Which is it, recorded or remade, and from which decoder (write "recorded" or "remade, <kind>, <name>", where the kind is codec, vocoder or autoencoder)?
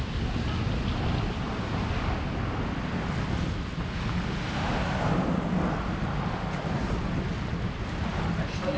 recorded